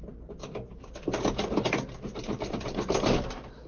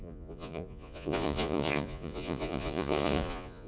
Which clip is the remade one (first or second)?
second